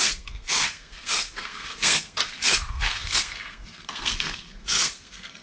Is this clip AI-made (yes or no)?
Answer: yes